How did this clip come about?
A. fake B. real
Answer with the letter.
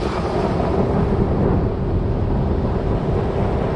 B